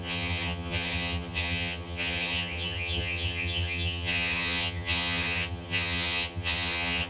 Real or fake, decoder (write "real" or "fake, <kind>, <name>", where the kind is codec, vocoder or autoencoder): fake, vocoder, HiFi-GAN